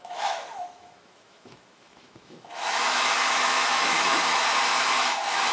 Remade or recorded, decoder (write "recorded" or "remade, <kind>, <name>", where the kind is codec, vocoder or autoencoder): remade, autoencoder, DAC-VAE